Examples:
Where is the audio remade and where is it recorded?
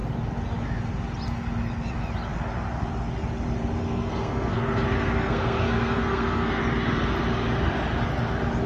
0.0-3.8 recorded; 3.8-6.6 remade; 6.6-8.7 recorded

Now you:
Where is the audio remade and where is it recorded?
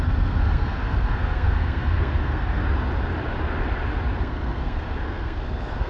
0.0-2.6 remade; 2.6-4.2 recorded; 4.2-5.9 remade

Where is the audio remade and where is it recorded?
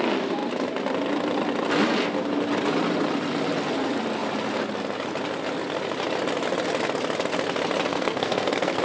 0.0-7.9 recorded; 7.9-8.8 remade